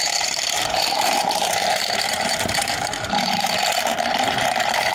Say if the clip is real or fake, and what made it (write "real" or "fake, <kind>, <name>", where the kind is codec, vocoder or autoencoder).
fake, vocoder, BigVGAN v2